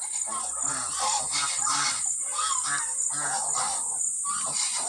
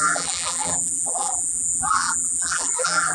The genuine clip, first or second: first